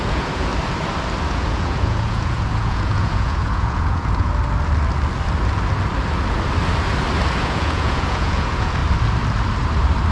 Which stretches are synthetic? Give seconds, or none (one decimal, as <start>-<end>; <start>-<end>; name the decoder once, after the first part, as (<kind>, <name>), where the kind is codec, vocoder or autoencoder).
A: 0.0-0.5 (vocoder, Vocos); 1.3-4.3; 7.4-8.8